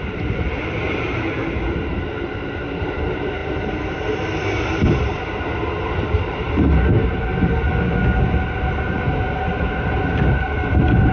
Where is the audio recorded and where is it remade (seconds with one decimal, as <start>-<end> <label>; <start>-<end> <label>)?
0.0-11.1 recorded